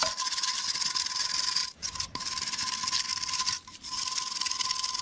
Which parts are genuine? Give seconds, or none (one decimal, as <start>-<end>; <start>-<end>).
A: 0.0-1.6; 2.6-3.1; 4.0-5.0